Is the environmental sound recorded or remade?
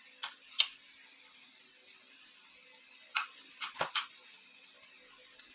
recorded